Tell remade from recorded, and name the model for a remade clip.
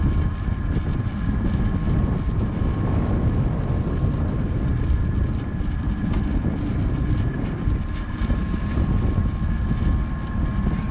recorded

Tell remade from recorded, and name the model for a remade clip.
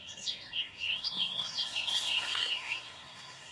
remade, codec, SNAC